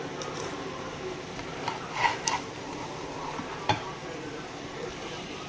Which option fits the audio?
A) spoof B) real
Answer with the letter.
A